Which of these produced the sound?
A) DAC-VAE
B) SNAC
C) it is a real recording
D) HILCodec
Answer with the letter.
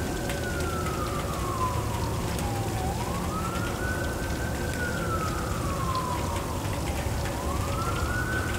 C